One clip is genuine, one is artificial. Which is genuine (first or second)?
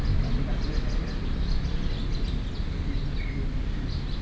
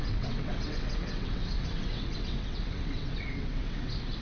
first